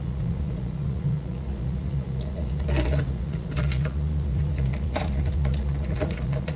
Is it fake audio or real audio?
fake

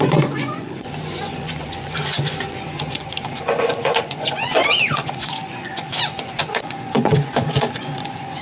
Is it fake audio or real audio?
fake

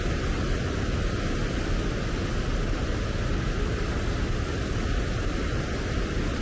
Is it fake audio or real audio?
real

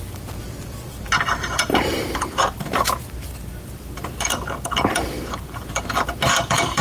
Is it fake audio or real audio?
fake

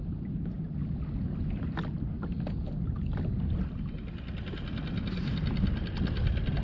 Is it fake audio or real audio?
real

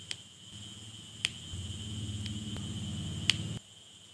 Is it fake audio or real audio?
real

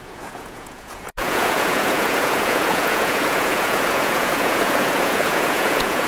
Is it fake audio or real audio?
fake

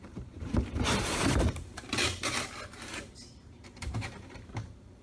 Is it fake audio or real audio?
fake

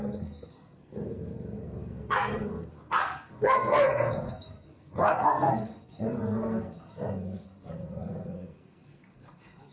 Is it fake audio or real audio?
fake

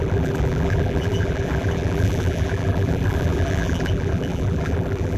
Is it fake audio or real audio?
fake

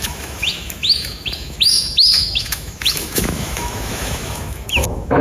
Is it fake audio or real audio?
fake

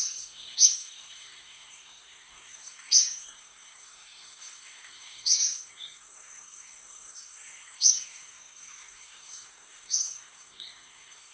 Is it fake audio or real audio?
fake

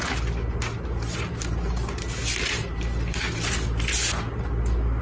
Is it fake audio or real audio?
real